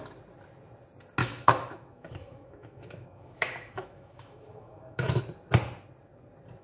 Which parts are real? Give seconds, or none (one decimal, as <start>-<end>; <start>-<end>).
0.0-1.2; 5.2-6.6